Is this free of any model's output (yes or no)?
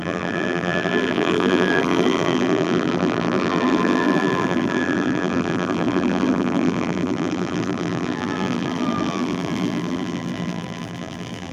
no